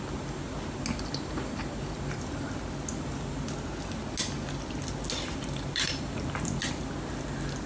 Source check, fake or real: real